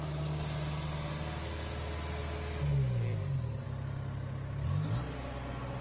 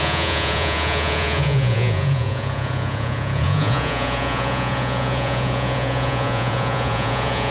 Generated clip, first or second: second